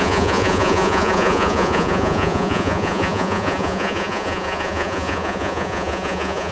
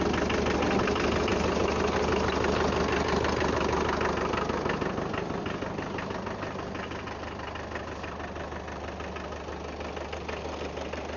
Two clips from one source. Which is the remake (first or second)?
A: first